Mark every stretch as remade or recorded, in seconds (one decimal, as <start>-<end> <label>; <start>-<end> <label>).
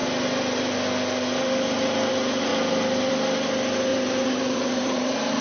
0.0-3.9 recorded; 3.9-5.4 remade